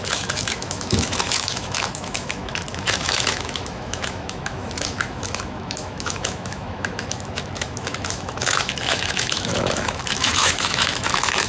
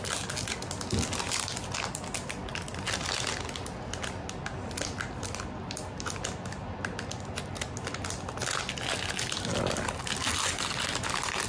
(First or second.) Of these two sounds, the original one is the second